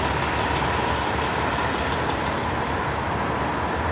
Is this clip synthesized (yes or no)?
no